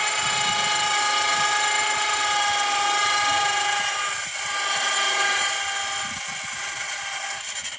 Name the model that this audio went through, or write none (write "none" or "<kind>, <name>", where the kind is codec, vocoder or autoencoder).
none